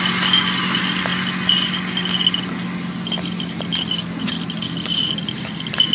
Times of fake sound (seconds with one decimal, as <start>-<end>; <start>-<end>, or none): none